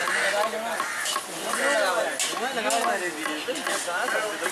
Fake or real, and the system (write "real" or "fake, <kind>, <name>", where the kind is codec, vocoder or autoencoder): real